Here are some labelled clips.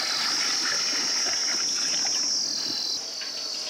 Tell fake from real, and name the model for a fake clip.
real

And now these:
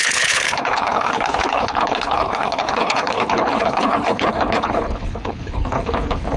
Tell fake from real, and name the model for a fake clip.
fake, codec, HILCodec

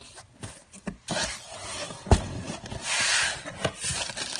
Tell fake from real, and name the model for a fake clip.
real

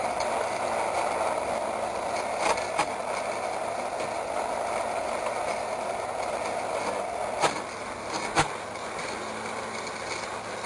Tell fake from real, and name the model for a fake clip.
real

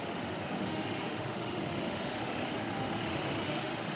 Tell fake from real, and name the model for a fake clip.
fake, autoencoder, DAC-VAE